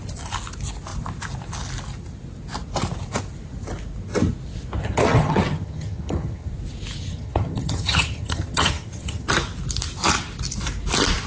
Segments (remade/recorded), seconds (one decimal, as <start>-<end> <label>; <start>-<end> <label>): 0.0-4.8 recorded; 4.8-6.5 remade; 6.5-7.1 recorded; 7.1-9.3 remade; 9.3-11.3 recorded